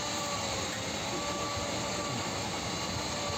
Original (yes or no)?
yes